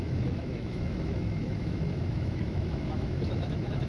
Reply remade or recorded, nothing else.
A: remade